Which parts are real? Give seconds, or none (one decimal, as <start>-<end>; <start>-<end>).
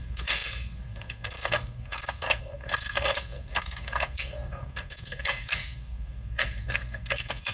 none